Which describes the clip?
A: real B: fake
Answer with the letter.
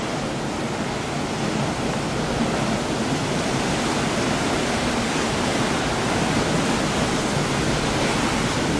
A